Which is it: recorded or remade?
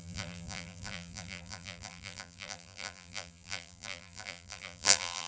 remade